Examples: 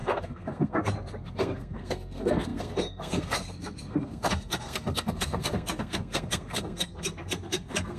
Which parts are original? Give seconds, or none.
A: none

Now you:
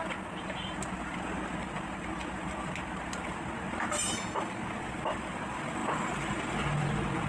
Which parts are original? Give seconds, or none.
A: 0.0-5.8; 6.3-7.3

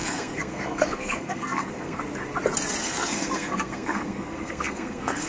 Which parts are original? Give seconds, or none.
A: 2.0-2.8

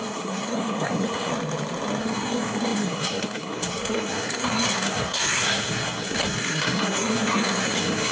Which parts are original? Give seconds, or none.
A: 1.3-2.0

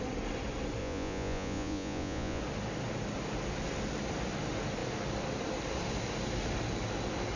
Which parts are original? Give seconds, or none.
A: 0.0-0.8; 2.4-7.4

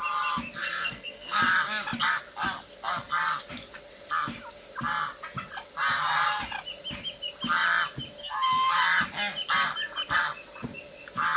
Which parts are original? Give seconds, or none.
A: 0.0-0.6; 1.4-8.2; 8.7-11.4

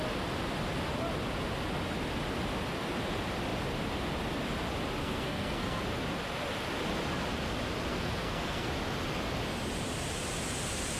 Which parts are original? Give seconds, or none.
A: 0.0-5.0; 5.8-7.9; 8.7-11.0

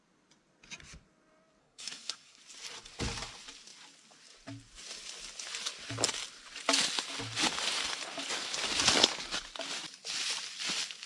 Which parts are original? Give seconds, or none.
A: 0.0-1.6; 2.4-11.1